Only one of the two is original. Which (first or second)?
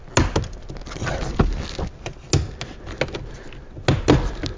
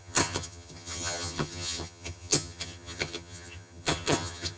first